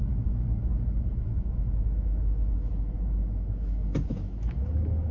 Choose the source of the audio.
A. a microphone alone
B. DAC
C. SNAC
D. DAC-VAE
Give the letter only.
D